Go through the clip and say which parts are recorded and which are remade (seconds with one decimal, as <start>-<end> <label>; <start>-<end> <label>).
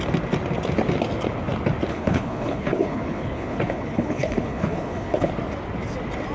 0.0-1.9 recorded; 1.9-5.3 remade; 5.3-6.3 recorded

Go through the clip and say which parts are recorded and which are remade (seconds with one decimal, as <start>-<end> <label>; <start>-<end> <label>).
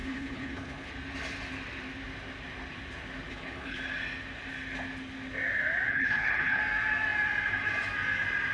0.0-0.9 remade; 0.9-3.3 recorded; 3.3-3.8 remade; 3.8-5.9 recorded; 5.9-6.6 remade; 6.6-8.5 recorded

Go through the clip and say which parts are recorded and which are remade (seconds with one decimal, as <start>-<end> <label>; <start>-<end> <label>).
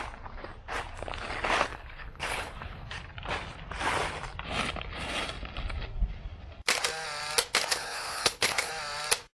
0.0-1.7 recorded; 1.7-2.9 remade; 2.9-7.7 recorded; 7.7-8.7 remade; 8.7-9.4 recorded